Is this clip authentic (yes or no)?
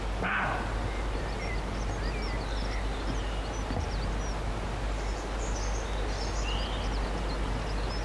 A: yes